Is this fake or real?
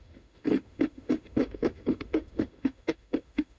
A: fake